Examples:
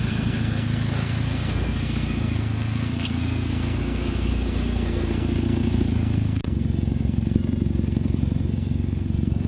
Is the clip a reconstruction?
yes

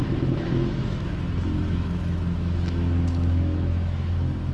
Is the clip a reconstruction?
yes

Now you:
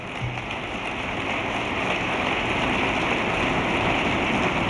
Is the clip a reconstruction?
no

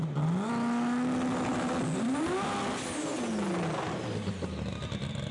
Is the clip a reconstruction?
no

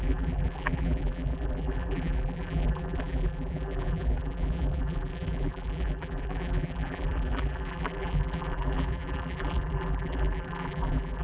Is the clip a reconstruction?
yes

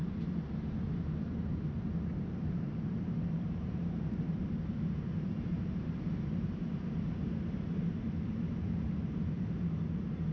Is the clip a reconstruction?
yes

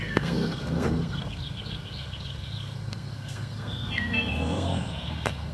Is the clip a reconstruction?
yes